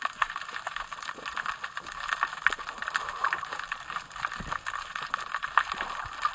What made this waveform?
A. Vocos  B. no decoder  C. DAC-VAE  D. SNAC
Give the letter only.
B